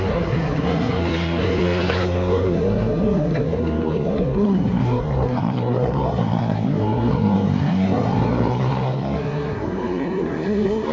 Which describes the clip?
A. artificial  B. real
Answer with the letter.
A